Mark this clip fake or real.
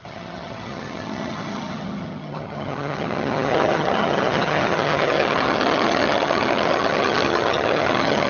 fake